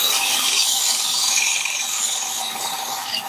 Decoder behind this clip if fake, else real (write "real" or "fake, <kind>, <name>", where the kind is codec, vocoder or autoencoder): fake, codec, DAC